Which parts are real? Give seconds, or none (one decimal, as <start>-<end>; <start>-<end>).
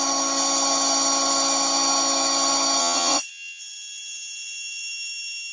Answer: 0.0-2.8; 3.6-5.5